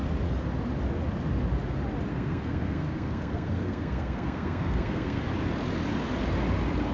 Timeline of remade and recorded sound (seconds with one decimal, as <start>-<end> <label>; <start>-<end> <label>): 0.0-2.1 recorded; 2.1-5.2 remade; 5.2-6.9 recorded